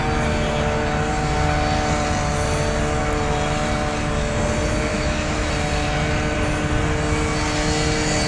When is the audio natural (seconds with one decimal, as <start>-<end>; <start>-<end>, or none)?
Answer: 0.0-4.9; 5.5-8.3